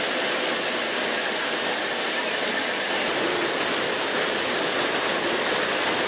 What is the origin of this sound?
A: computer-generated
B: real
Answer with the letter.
A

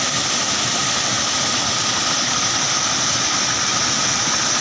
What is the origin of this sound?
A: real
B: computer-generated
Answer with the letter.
A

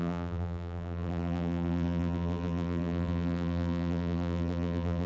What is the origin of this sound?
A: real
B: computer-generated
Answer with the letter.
B